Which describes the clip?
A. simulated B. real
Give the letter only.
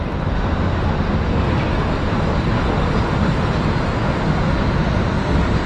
B